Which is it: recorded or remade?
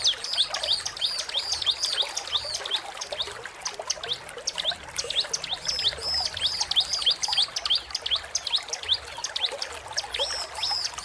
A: recorded